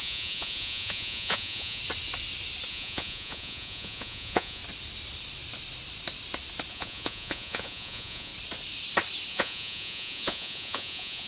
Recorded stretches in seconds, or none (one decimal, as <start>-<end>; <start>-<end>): 1.8-2.7; 4.6-6.7; 8.3-9.3

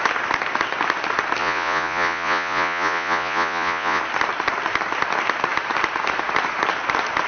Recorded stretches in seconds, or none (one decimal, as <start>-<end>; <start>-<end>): 0.0-1.4; 4.0-7.3